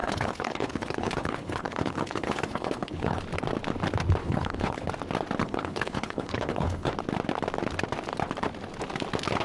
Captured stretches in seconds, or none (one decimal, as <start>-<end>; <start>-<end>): 3.2-4.2; 4.9-5.4; 6.9-9.4